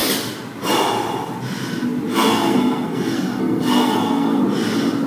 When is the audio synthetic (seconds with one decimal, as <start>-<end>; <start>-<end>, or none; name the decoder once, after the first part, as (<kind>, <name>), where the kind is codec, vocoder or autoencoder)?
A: 2.1-4.4 (codec, SNAC)